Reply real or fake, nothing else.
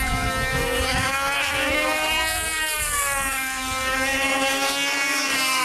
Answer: fake